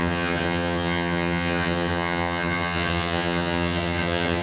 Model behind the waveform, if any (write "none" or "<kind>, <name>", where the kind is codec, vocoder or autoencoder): vocoder, HiFi-GAN